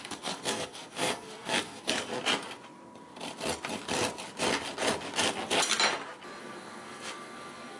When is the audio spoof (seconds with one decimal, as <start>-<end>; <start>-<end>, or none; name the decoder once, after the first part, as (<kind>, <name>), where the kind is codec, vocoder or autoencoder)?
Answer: 0.0-2.1 (codec, SNAC); 6.4-7.8